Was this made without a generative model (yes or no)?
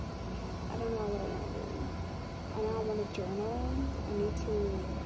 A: yes